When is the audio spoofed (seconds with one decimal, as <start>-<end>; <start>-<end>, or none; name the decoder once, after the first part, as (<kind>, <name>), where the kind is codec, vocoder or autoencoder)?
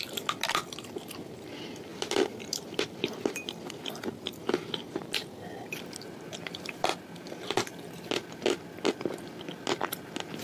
1.9-3.9 (vocoder, BigVGAN v2)